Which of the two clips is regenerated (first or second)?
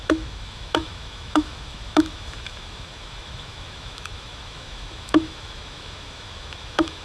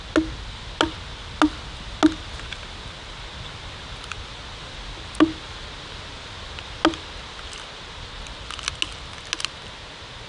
first